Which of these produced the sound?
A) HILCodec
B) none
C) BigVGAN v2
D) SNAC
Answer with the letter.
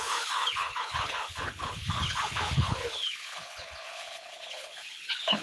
A